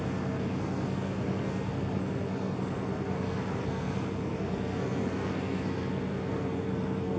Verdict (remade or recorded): remade